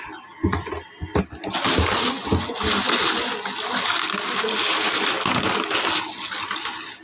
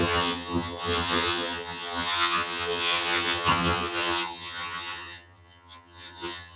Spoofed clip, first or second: second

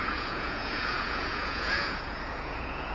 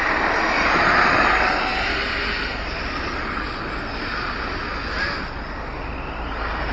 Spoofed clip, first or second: first